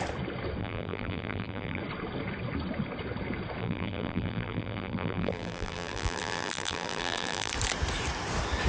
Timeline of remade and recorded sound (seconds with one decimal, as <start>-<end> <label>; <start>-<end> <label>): 0.0-0.6 recorded; 0.6-1.8 remade; 1.8-3.6 recorded; 3.6-7.5 remade; 7.5-8.7 recorded